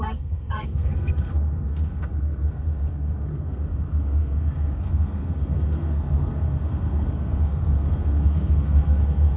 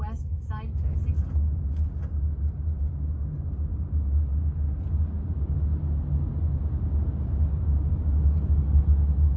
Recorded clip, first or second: second